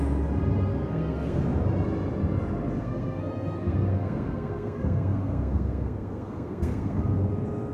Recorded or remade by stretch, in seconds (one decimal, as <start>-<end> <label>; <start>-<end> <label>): 0.0-0.7 recorded; 0.7-1.4 remade; 1.4-2.8 recorded; 2.8-7.1 remade; 7.1-7.7 recorded